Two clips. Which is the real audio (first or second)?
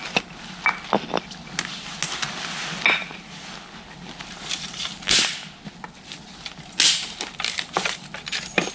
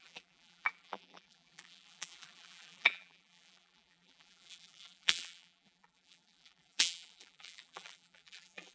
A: first